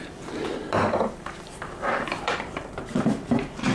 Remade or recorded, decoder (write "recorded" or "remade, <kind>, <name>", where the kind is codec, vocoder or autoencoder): remade, vocoder, BigVGAN v2